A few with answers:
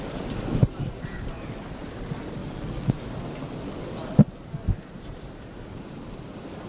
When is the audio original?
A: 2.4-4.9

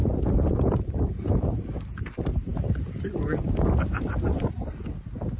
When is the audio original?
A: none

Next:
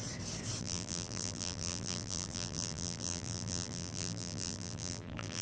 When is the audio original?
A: 0.0-0.6